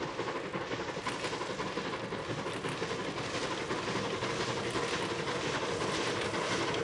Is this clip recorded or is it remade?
recorded